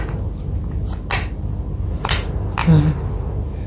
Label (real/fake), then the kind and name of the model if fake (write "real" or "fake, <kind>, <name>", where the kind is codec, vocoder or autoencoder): real